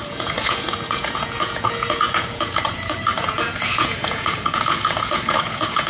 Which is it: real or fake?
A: fake